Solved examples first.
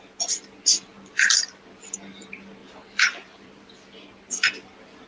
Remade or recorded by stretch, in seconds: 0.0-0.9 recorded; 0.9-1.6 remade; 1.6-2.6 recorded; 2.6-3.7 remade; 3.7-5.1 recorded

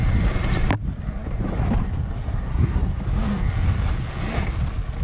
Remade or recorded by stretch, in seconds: 0.0-2.5 recorded; 2.5-3.0 remade; 3.0-5.0 recorded

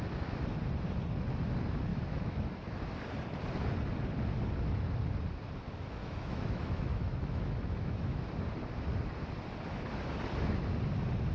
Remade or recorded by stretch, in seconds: 0.0-1.9 recorded; 1.9-2.4 remade; 2.4-6.0 recorded; 6.0-8.2 remade; 8.2-11.3 recorded

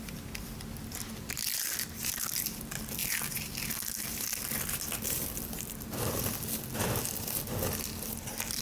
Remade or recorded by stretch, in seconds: 0.0-1.5 recorded; 1.5-2.4 remade; 2.4-8.6 recorded

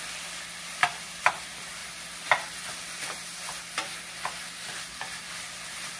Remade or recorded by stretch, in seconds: 0.0-6.0 recorded